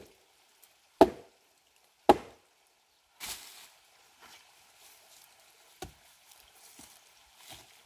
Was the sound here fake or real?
real